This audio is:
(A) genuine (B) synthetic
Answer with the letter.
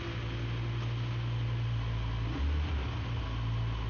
A